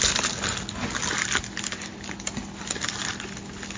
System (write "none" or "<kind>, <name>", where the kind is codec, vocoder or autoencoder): none